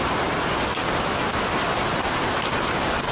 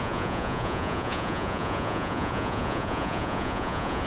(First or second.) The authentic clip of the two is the first